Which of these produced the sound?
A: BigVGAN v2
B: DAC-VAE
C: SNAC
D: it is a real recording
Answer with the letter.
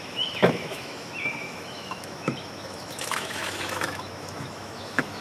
B